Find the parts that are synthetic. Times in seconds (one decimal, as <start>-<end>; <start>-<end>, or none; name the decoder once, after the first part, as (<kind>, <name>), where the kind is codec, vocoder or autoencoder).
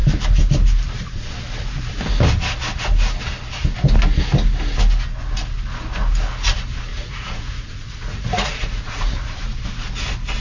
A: 6.9-9.4 (vocoder, Vocos)